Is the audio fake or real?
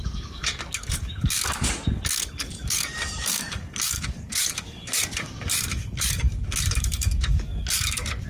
fake